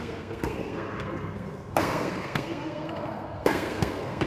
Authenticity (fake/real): fake